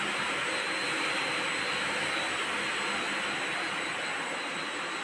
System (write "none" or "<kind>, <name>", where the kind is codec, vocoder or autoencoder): none